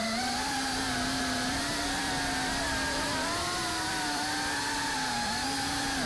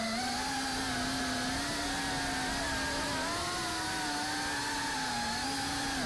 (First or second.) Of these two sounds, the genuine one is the second